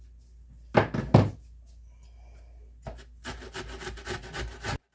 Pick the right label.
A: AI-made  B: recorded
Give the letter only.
B